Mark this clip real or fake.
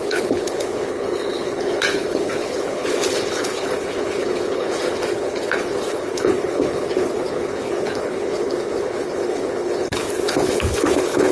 fake